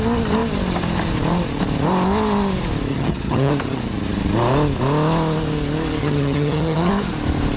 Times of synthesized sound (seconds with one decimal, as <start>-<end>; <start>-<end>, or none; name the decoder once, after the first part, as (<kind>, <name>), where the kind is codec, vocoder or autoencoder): 2.9-3.5 (vocoder, HiFi-GAN); 6.0-6.9